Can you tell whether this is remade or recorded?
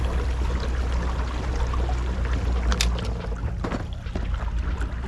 recorded